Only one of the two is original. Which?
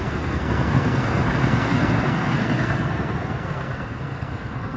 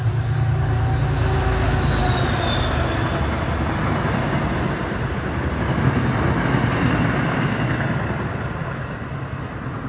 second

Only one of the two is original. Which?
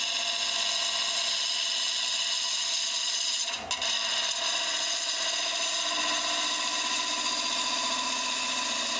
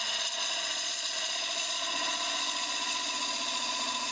first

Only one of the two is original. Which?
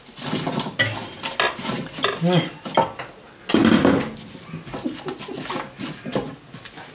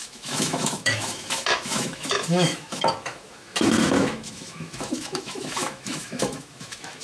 first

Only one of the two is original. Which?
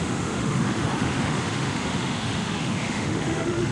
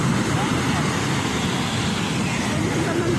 second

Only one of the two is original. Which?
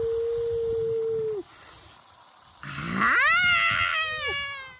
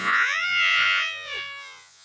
first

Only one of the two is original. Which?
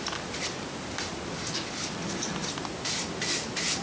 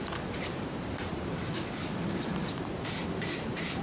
first